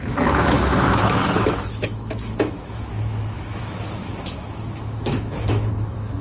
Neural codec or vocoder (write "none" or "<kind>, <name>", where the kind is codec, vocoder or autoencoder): autoencoder, DAC-VAE